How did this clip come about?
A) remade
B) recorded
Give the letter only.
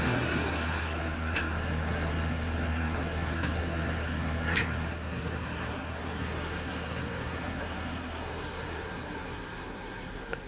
A